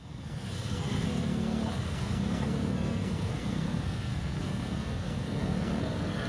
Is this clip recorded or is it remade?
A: remade